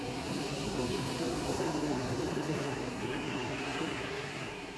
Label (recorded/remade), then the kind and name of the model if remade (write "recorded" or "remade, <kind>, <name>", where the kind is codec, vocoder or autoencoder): remade, codec, SNAC